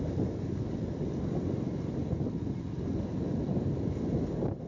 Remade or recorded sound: recorded